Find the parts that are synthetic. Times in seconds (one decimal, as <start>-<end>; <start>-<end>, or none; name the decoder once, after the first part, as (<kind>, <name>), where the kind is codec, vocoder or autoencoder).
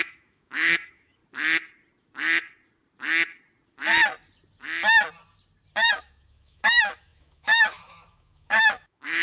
0.0-1.2 (autoencoder, DAC-VAE); 5.9-9.2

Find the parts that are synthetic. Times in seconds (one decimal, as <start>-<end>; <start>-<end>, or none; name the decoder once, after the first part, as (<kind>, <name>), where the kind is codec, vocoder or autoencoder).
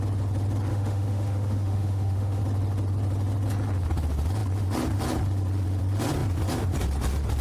0.7-2.4 (autoencoder, DAC-VAE)